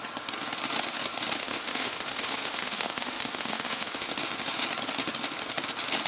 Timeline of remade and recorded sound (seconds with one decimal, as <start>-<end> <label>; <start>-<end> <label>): 0.0-1.4 recorded; 1.4-4.1 remade; 4.1-6.1 recorded